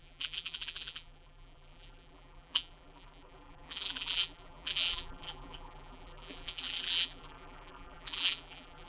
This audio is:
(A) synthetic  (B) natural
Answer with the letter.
A